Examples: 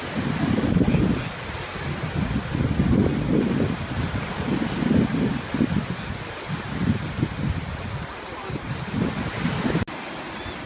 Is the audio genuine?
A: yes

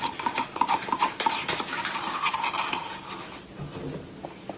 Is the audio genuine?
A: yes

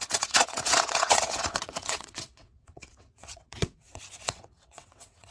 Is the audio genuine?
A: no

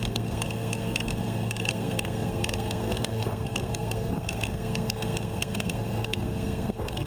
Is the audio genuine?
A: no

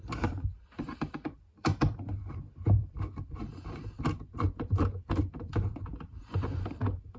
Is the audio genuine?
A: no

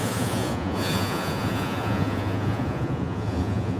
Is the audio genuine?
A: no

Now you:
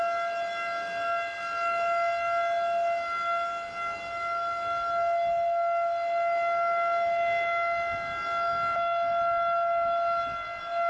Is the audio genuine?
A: yes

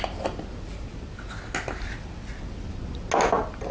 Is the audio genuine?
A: yes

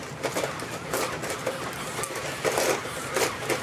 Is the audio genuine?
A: yes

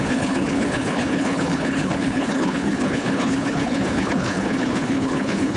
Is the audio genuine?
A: no